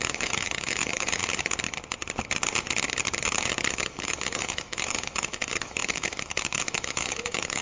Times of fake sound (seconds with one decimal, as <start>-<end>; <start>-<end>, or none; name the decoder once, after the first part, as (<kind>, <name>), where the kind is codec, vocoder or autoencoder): 0.0-1.2 (autoencoder, DAC-VAE); 3.7-7.6